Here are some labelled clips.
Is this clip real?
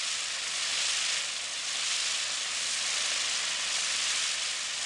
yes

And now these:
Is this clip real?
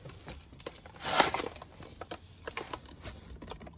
yes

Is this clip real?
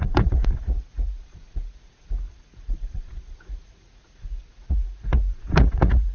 no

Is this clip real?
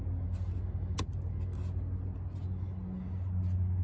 yes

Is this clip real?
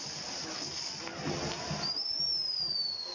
yes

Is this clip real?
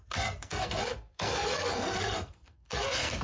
no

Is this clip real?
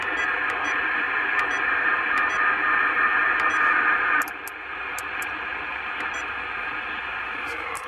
no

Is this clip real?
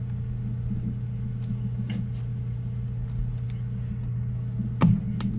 yes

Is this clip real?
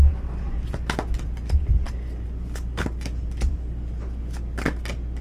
yes